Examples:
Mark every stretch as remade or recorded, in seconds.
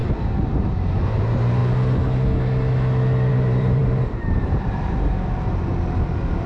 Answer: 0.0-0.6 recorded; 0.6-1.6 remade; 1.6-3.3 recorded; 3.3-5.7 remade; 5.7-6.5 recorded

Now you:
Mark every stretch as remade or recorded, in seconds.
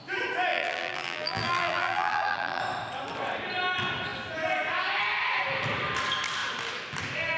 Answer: 0.0-0.5 recorded; 0.5-2.6 remade; 2.6-7.4 recorded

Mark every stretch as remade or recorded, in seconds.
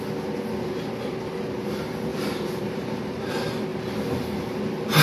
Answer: 0.0-2.1 recorded; 2.1-3.3 remade; 3.3-5.0 recorded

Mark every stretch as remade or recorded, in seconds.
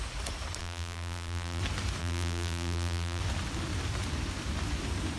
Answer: 0.0-0.6 recorded; 0.6-1.6 remade; 1.6-2.0 recorded; 2.0-3.2 remade; 3.2-5.2 recorded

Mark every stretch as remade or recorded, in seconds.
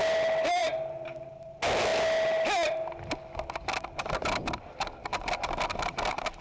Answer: 0.0-0.6 recorded; 0.6-1.5 remade; 1.5-6.4 recorded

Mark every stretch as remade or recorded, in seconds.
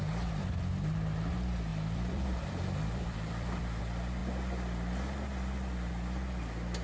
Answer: 0.0-1.7 recorded; 1.7-3.8 remade; 3.8-6.8 recorded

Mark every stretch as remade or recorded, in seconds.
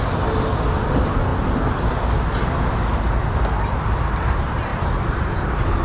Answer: 0.0-4.7 recorded; 4.7-5.8 remade